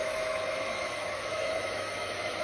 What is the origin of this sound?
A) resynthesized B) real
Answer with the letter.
A